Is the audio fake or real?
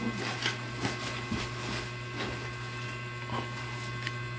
real